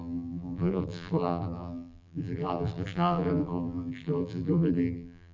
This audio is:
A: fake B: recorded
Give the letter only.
A